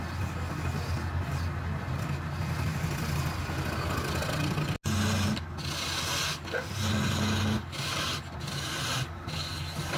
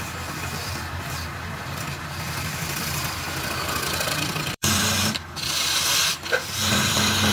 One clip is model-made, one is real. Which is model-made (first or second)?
second